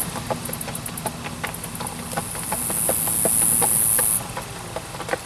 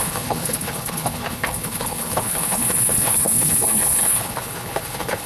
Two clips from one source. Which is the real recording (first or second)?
first